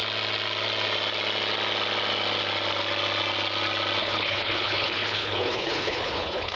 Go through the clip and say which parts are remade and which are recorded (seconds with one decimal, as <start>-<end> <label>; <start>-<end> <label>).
0.0-4.0 recorded; 4.0-6.6 remade